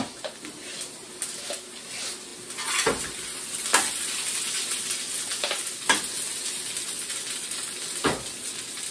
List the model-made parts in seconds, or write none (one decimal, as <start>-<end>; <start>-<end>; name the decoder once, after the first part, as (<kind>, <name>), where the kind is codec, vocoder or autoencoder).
none